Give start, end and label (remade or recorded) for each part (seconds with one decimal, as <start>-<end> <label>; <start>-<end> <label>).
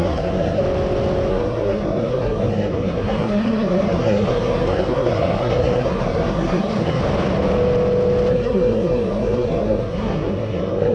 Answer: 0.0-0.6 remade; 0.6-1.3 recorded; 1.3-7.0 remade; 7.0-8.3 recorded; 8.3-10.9 remade